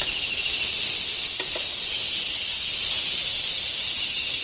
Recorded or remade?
recorded